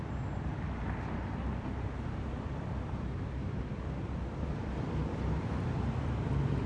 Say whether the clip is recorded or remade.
remade